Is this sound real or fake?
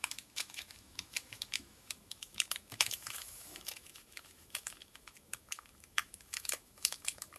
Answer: fake